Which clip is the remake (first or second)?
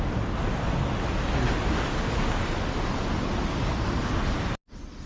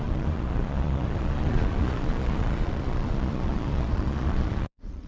second